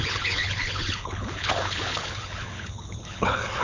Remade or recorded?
remade